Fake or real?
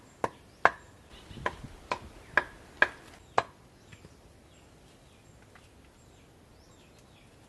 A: real